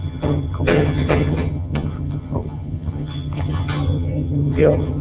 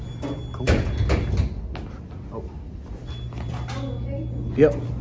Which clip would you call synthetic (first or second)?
first